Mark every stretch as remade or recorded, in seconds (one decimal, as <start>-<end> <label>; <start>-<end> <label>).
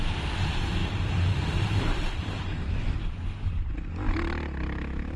0.0-0.8 recorded; 0.8-3.9 remade; 3.9-5.2 recorded